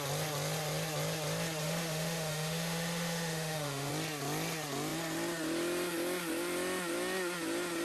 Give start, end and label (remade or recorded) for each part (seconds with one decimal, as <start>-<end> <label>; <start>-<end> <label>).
0.0-1.6 recorded; 1.6-3.9 remade; 3.9-7.8 recorded